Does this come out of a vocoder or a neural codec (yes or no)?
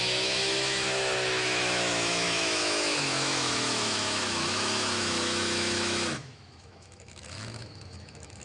yes